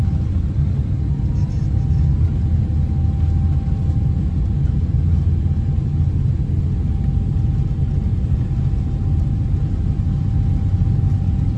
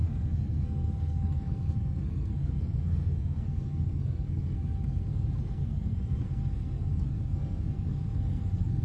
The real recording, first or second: first